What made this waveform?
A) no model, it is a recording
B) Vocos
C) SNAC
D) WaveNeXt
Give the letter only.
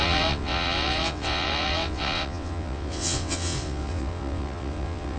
D